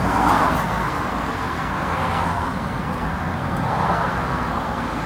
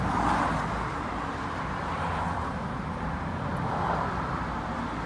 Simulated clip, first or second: first